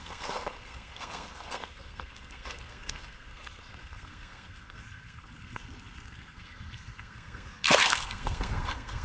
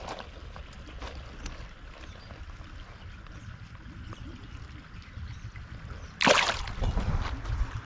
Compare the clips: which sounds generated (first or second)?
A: first